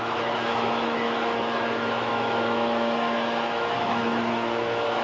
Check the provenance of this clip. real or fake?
fake